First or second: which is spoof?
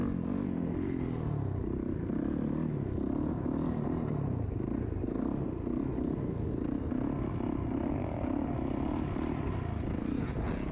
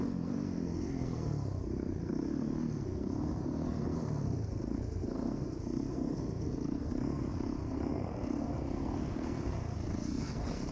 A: second